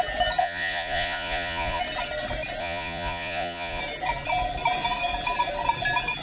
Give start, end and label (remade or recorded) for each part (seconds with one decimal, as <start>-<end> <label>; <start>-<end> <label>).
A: 0.0-0.4 recorded; 0.4-1.8 remade; 1.8-2.6 recorded; 2.6-3.8 remade; 3.8-6.2 recorded